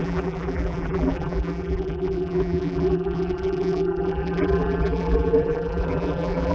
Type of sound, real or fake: fake